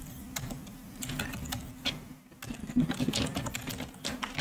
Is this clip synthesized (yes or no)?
no